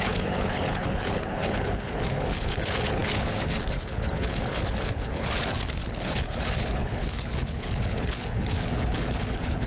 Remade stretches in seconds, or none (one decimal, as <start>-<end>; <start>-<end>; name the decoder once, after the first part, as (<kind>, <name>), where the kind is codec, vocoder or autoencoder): 0.0-9.7 (codec, HILCodec)